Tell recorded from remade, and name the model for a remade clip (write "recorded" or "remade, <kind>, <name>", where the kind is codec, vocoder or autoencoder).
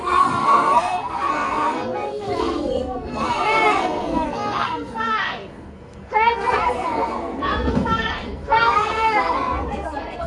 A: remade, codec, SNAC